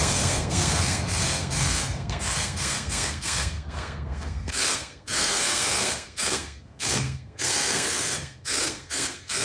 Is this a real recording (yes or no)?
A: no